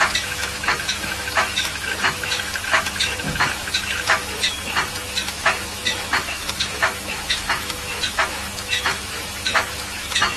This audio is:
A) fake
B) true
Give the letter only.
A